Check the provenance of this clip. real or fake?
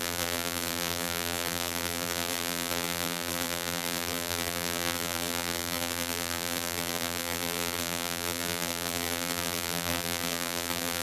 fake